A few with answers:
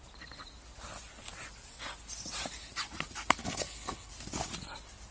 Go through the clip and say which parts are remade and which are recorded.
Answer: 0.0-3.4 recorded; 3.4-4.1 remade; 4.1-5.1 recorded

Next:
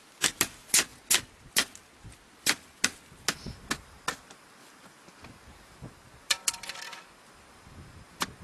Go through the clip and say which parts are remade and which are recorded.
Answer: 0.0-8.4 recorded